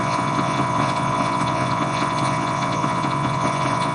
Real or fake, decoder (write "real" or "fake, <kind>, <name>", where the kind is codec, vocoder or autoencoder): fake, vocoder, Vocos